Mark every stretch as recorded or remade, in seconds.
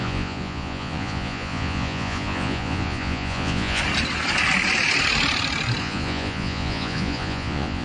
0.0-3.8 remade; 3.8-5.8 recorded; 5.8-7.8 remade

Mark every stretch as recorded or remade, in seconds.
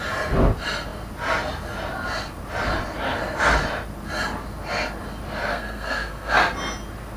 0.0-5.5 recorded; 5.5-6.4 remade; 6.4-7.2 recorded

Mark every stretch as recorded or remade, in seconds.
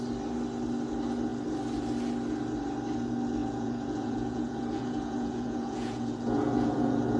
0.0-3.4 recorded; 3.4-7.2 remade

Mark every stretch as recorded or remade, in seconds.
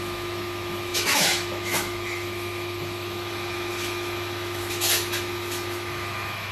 0.0-6.5 remade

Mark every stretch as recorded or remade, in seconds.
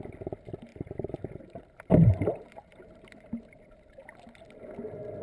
0.0-0.7 recorded; 0.7-3.8 remade; 3.8-5.2 recorded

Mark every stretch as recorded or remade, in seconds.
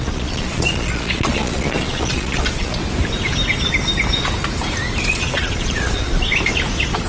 0.0-2.8 remade; 2.8-5.1 recorded; 5.1-6.1 remade; 6.1-7.1 recorded